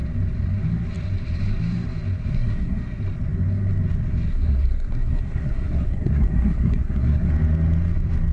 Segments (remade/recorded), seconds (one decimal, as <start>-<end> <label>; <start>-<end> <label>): 0.0-2.3 recorded; 2.3-3.0 remade; 3.0-4.3 recorded; 4.3-7.3 remade; 7.3-8.3 recorded